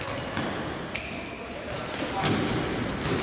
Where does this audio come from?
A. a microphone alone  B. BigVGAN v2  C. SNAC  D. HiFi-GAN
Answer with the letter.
A